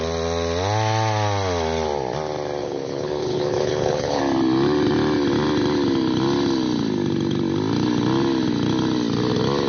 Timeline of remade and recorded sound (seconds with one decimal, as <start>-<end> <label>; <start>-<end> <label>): 0.0-2.6 recorded; 2.6-4.2 remade; 4.2-9.7 recorded